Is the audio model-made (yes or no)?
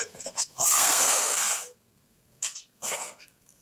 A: yes